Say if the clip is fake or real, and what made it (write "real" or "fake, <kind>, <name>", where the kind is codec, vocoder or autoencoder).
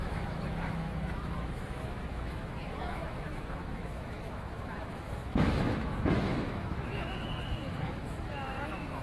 fake, autoencoder, DAC-VAE